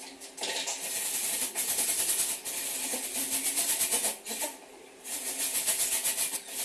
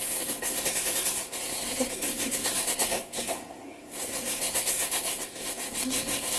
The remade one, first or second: second